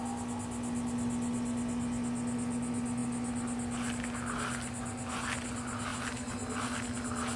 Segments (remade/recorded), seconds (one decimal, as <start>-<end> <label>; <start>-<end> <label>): 0.0-7.4 recorded